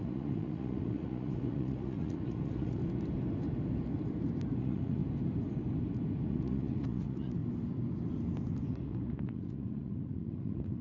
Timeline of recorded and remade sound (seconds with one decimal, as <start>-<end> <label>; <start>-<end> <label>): 0.0-2.8 remade; 2.8-4.6 recorded; 4.6-5.0 remade; 5.0-6.3 recorded; 6.3-7.4 remade; 7.4-8.7 recorded; 8.7-10.8 remade